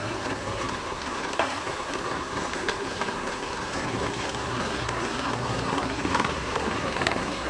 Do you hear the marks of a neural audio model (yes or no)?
yes